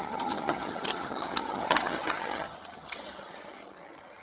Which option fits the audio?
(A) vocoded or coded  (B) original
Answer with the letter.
A